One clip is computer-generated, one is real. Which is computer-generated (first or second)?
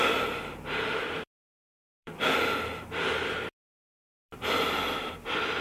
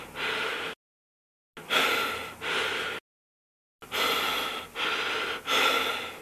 first